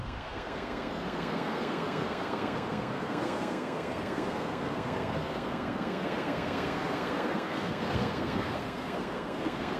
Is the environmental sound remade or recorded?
remade